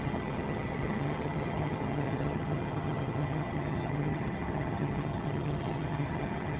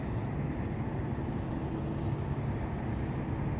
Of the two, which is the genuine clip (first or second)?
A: second